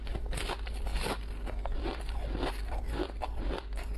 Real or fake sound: real